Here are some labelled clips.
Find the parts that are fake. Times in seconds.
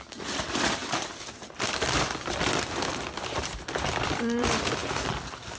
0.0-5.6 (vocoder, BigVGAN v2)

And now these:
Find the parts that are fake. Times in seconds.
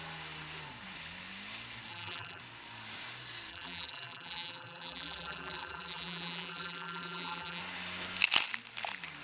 1.9-2.4 (vocoder, BigVGAN v2); 3.5-7.6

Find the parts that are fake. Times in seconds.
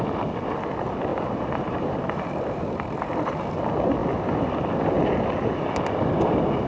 1.1-3.4 (vocoder, BigVGAN v2)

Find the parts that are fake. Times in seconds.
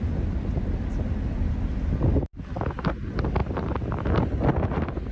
3.4-4.0 (vocoder, BigVGAN v2)